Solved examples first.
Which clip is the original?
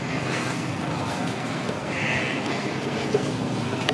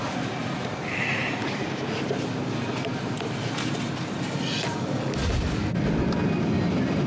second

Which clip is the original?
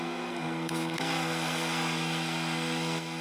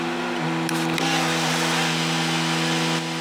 second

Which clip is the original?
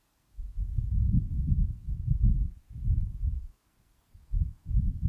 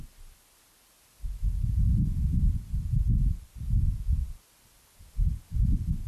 second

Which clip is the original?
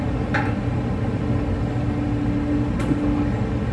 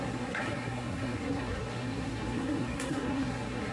first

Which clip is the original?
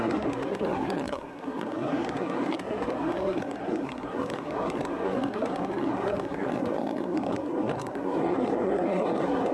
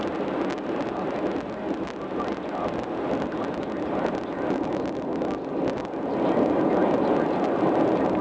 second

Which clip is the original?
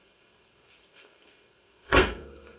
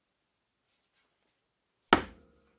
second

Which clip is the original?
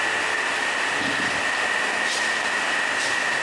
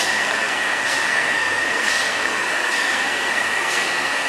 first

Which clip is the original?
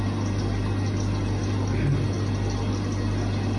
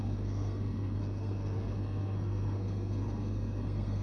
first